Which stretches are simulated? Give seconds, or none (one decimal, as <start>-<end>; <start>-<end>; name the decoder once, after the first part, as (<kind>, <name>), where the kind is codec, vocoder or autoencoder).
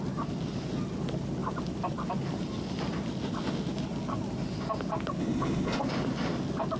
5.2-5.8 (codec, HILCodec)